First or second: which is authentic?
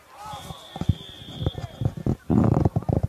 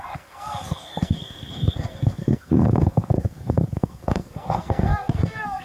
first